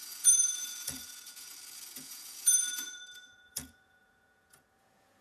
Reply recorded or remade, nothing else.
remade